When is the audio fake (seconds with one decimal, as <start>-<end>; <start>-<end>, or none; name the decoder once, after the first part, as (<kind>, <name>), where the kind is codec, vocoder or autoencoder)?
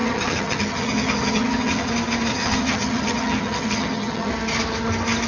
0.0-1.9 (vocoder, HiFi-GAN); 2.3-4.3